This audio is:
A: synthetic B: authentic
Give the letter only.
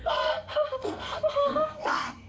A